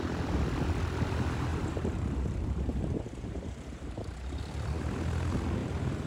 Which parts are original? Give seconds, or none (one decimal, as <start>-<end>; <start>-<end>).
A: 0.0-1.5; 4.4-5.6